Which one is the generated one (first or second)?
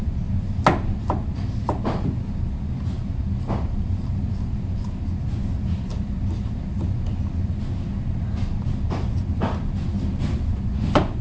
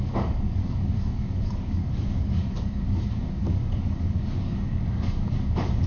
second